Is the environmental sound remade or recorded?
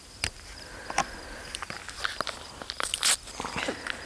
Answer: recorded